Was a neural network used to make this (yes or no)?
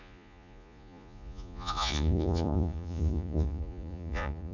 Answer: yes